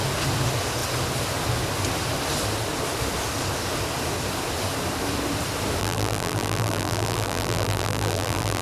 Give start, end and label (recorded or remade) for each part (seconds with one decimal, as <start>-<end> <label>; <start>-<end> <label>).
0.0-5.8 recorded; 5.8-8.6 remade

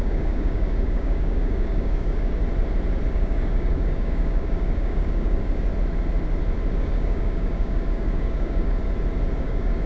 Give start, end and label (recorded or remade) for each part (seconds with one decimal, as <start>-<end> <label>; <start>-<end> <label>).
0.0-2.4 remade; 2.4-3.1 recorded; 3.1-5.7 remade; 5.7-6.7 recorded; 6.7-8.8 remade; 8.8-9.4 recorded; 9.4-9.9 remade

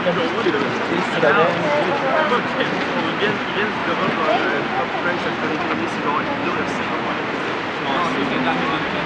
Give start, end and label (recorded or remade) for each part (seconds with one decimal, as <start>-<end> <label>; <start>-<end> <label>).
0.0-0.7 recorded; 0.7-1.3 remade; 1.3-3.8 recorded; 3.8-4.8 remade; 4.8-6.4 recorded; 6.4-7.2 remade; 7.2-9.1 recorded

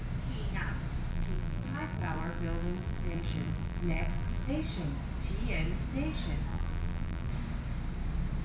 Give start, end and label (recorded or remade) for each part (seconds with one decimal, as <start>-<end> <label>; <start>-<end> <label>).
0.0-1.1 recorded; 1.1-4.5 remade; 4.5-6.5 recorded; 6.5-7.3 remade; 7.3-8.4 recorded

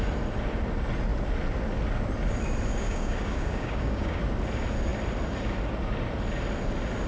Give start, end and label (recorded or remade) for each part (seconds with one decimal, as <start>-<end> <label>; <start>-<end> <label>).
0.0-2.7 recorded; 2.7-4.2 remade; 4.2-7.1 recorded

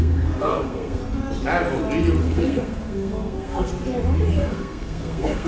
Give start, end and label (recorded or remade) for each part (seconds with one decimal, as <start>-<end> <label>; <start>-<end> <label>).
0.0-1.0 remade; 1.0-2.2 recorded; 2.2-3.7 remade; 3.7-4.3 recorded; 4.3-5.5 remade